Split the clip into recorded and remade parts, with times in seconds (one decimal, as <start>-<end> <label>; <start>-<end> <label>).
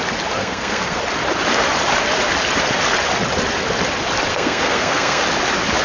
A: 0.0-0.4 recorded; 0.4-1.0 remade; 1.0-4.3 recorded; 4.3-5.2 remade; 5.2-5.8 recorded